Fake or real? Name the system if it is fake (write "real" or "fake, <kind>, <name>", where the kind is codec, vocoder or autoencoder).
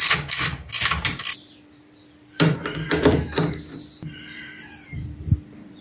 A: fake, vocoder, BigVGAN v2